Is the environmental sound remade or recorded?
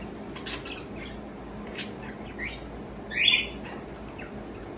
recorded